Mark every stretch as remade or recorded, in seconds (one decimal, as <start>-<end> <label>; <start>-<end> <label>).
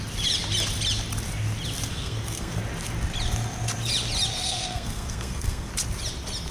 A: 0.0-1.9 recorded; 1.9-2.6 remade; 2.6-4.3 recorded; 4.3-5.7 remade; 5.7-6.5 recorded